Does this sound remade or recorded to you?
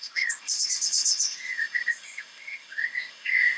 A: remade